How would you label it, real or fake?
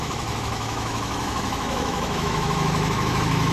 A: fake